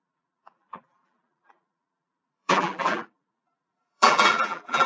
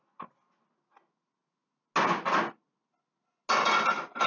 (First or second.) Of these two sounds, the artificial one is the first